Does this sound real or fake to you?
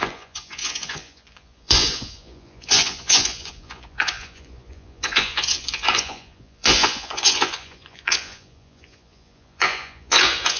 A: fake